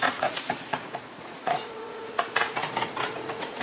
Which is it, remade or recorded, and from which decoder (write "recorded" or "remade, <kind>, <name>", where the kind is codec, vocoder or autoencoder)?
remade, vocoder, Vocos